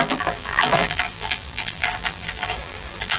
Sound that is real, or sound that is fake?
fake